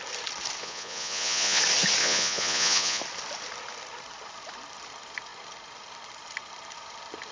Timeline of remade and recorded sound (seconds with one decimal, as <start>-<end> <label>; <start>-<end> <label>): 0.0-0.6 recorded; 0.6-1.6 remade; 1.6-2.0 recorded; 2.0-3.0 remade; 3.0-7.3 recorded